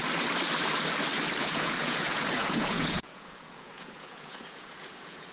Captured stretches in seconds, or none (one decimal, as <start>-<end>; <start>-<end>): 0.0-1.4